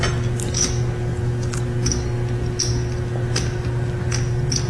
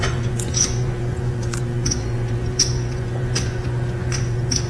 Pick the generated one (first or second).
second